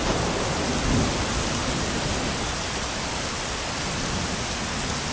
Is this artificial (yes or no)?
no